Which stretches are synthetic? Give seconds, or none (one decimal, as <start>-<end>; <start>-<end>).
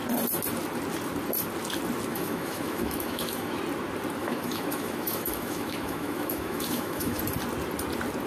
2.1-3.6; 4.2-7.2